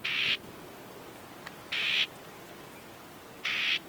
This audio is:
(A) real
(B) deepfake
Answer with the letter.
A